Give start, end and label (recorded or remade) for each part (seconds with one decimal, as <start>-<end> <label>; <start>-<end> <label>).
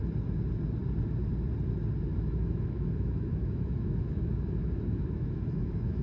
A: 0.0-2.1 recorded; 2.1-6.0 remade